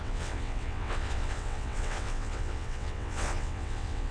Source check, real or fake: fake